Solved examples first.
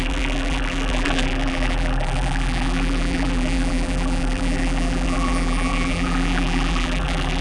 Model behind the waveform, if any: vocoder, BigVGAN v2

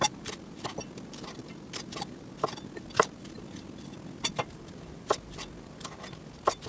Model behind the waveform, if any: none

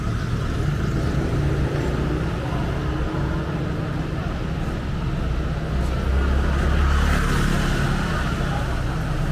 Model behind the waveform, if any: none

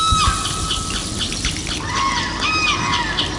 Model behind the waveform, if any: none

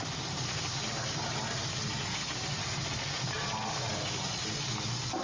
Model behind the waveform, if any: none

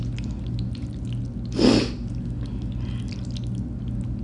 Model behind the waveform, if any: none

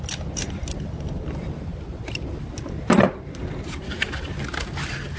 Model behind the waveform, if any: vocoder, BigVGAN v2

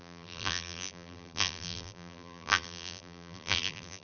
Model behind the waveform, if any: vocoder, BigVGAN v2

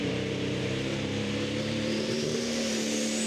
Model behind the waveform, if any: vocoder, BigVGAN v2